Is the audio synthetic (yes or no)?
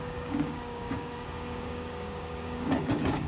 yes